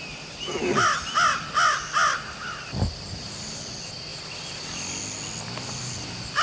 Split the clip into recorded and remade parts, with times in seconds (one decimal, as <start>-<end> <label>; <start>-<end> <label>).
0.0-6.4 recorded